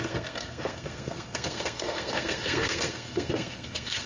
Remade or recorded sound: remade